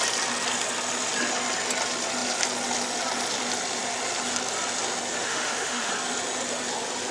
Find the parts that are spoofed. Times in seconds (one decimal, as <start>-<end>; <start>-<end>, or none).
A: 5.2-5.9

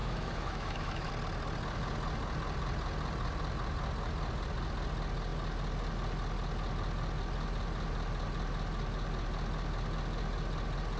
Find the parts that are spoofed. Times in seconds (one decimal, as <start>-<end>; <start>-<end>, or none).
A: 0.0-1.1

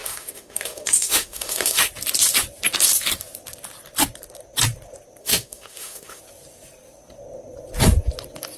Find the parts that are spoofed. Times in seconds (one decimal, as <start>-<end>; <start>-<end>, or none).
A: 0.0-1.9; 5.2-6.2

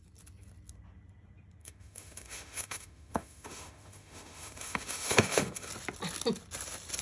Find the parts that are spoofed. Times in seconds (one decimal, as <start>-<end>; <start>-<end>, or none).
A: 1.6-5.7